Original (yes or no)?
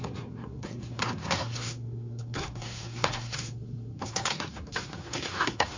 no